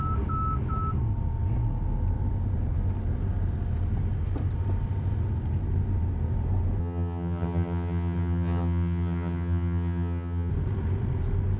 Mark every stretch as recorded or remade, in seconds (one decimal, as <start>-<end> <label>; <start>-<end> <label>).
0.0-6.8 recorded; 6.8-10.5 remade; 10.5-11.6 recorded

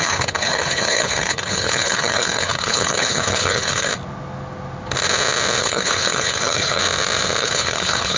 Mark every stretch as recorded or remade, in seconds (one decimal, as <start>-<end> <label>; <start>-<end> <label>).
0.0-3.9 remade; 3.9-5.6 recorded; 5.6-6.8 remade; 6.8-7.4 recorded; 7.4-8.2 remade

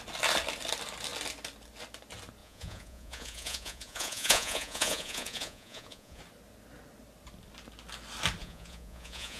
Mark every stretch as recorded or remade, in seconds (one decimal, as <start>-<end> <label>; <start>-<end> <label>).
0.0-2.4 recorded; 2.4-6.2 remade; 6.2-8.4 recorded; 8.4-9.4 remade

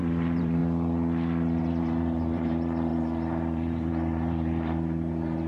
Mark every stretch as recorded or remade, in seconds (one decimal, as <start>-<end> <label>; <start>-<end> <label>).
0.0-0.6 remade; 0.6-1.6 recorded; 1.6-5.5 remade

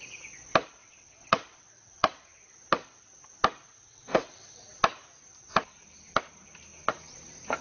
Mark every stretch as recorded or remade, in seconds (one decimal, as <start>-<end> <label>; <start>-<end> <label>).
0.0-0.8 recorded; 0.8-2.3 remade; 2.3-3.9 recorded; 3.9-4.6 remade; 4.6-7.6 recorded

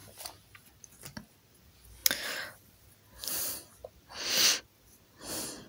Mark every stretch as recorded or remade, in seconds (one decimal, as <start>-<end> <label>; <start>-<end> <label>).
0.0-5.7 recorded